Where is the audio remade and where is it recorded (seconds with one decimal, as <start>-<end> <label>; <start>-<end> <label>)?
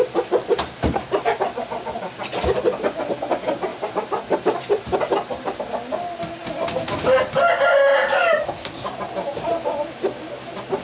0.0-3.7 recorded; 3.7-5.6 remade; 5.6-10.8 recorded